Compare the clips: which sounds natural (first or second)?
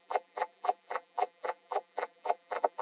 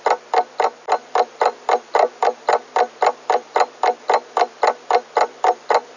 second